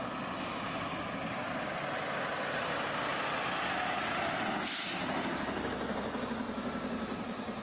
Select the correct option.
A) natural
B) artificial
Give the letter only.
A